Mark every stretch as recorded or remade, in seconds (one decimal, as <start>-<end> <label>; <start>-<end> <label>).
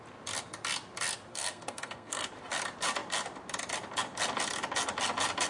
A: 0.0-1.3 recorded; 1.3-2.3 remade; 2.3-5.5 recorded